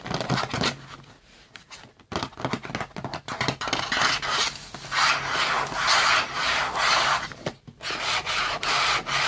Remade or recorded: recorded